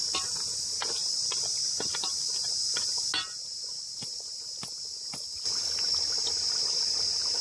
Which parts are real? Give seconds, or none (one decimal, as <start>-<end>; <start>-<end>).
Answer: 0.0-7.4